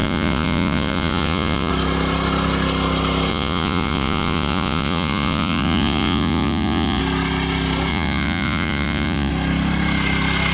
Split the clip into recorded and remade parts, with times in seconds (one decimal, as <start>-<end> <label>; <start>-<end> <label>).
0.0-1.7 remade; 1.7-3.3 recorded; 3.3-7.0 remade; 7.0-7.9 recorded; 7.9-9.3 remade; 9.3-10.5 recorded